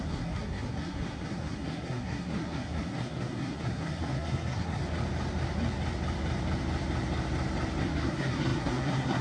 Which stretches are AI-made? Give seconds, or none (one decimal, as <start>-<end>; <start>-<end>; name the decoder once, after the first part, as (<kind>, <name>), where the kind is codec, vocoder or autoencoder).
0.0-4.8 (codec, SNAC); 7.8-9.2